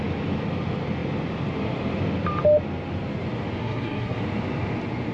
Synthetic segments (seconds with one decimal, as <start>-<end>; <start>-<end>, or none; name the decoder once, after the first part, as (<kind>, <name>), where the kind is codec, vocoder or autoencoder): 3.6-4.2 (codec, SNAC)